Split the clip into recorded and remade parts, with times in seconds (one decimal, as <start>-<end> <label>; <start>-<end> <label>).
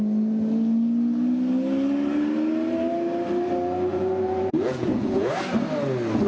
0.0-3.9 recorded; 3.9-5.3 remade; 5.3-6.3 recorded